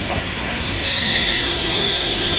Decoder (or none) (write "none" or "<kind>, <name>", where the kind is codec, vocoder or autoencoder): codec, SNAC